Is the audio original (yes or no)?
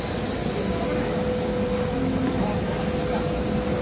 yes